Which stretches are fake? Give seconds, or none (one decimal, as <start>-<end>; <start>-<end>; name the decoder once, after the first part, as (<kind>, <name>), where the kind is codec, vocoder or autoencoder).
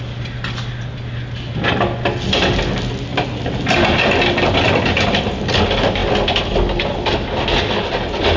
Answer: none